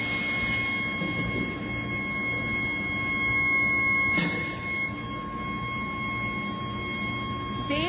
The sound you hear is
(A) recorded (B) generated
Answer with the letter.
A